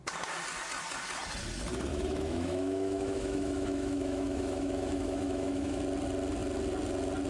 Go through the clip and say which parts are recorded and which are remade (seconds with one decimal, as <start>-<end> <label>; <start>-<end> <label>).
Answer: 0.0-1.9 recorded; 1.9-5.8 remade; 5.8-7.3 recorded